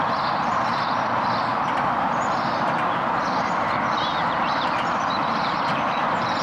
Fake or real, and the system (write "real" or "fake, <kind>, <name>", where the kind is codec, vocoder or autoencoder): fake, vocoder, BigVGAN v2